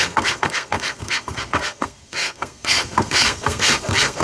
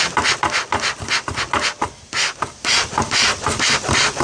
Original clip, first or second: second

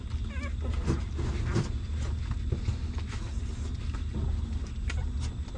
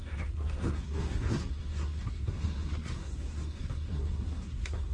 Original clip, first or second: first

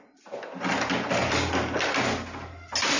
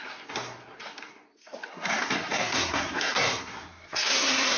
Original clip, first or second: first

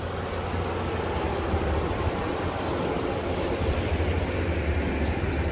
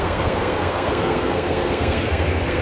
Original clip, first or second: first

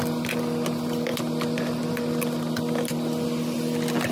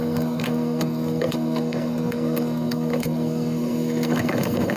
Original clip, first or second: first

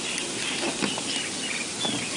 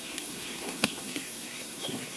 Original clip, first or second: first